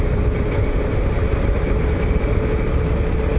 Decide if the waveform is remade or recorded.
recorded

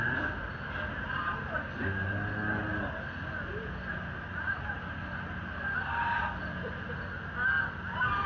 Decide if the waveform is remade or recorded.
recorded